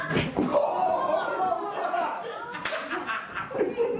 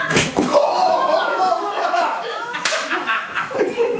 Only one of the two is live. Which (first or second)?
first